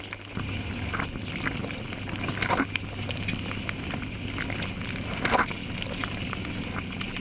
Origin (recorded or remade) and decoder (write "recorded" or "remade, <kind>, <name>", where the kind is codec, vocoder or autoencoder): recorded